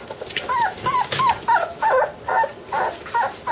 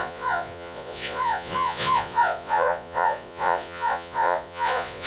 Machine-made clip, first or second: second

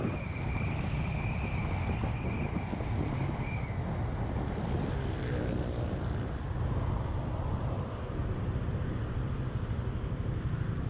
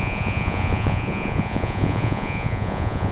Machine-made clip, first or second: second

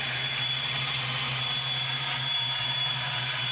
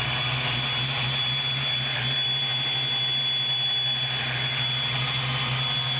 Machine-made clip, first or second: first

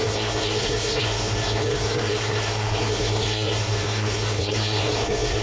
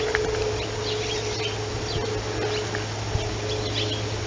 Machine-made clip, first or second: first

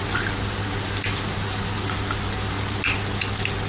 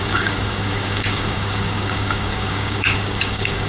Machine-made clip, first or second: second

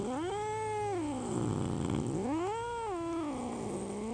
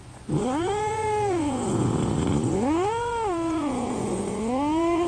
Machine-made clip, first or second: second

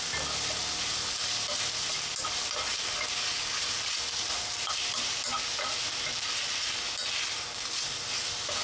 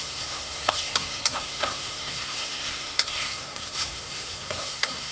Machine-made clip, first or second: second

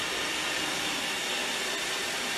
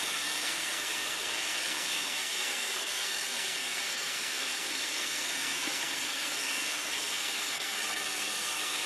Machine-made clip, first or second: second